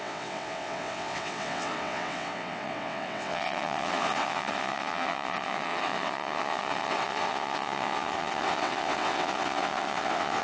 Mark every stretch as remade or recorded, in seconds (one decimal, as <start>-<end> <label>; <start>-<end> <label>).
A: 0.0-10.4 remade